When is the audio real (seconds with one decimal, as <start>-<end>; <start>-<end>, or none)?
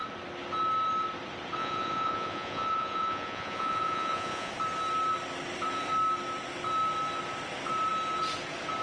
0.0-1.6; 4.5-8.8